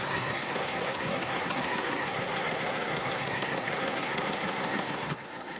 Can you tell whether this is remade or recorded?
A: remade